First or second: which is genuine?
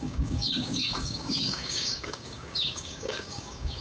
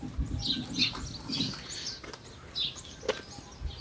second